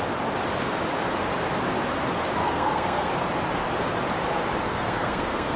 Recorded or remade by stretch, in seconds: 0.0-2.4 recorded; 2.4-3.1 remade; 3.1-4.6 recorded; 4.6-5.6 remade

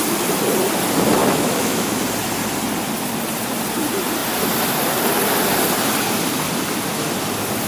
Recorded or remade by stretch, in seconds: 0.0-1.2 recorded; 1.2-2.0 remade; 2.0-7.7 recorded

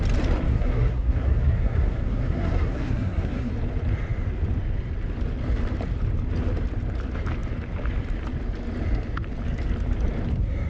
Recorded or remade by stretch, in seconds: 0.0-0.5 recorded; 0.5-3.5 remade; 3.5-10.7 recorded

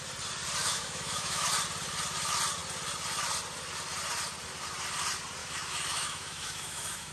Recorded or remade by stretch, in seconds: 0.0-0.6 recorded; 0.6-1.5 remade; 1.5-5.4 recorded; 5.4-7.1 remade

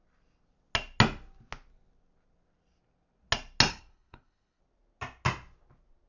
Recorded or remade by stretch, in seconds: 0.0-3.7 recorded; 3.7-4.6 remade; 4.6-6.1 recorded

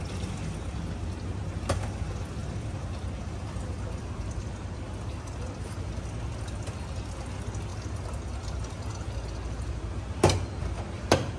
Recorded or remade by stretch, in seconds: 0.0-11.4 recorded

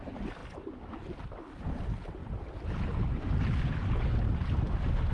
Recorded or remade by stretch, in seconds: 0.0-5.1 recorded